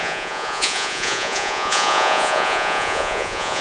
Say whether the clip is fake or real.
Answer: fake